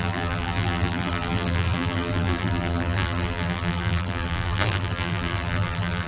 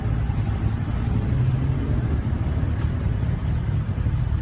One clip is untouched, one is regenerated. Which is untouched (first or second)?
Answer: second